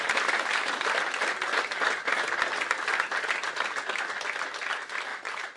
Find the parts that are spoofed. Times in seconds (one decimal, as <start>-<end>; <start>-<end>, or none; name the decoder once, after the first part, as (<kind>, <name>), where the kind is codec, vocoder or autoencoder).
5.1-5.6 (vocoder, BigVGAN v2)